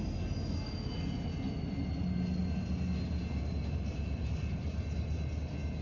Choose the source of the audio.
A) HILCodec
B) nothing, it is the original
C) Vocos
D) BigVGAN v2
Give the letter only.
B